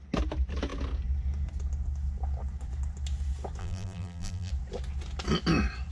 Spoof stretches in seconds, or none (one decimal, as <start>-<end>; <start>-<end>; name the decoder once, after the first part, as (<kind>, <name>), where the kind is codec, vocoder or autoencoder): 3.6-4.5 (vocoder, BigVGAN v2)